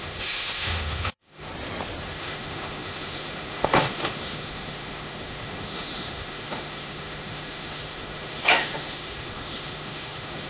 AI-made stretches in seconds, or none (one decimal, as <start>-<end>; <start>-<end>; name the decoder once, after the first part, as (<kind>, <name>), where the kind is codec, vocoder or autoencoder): 0.0-1.5 (autoencoder, DAC-VAE); 2.0-10.5